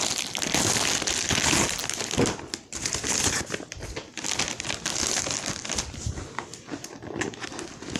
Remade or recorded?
recorded